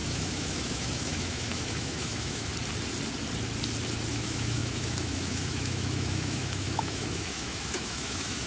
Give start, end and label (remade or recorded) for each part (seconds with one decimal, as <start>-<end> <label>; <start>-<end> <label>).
0.0-2.5 remade; 2.5-4.1 recorded; 4.1-8.5 remade